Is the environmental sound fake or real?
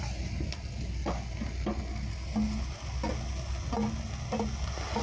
real